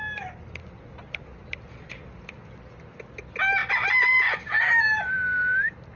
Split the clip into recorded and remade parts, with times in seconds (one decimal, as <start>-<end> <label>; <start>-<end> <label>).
0.0-6.0 recorded